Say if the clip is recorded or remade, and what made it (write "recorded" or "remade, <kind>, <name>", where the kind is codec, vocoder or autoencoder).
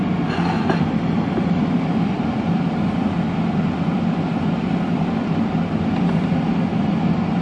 recorded